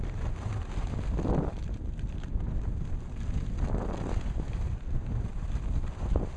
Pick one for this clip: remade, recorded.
recorded